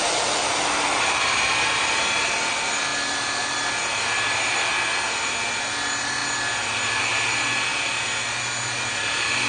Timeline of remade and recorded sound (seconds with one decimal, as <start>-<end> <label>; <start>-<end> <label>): 0.0-9.5 recorded